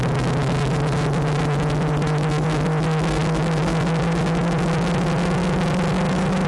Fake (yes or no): no